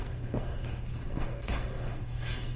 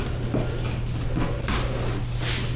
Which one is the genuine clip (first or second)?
second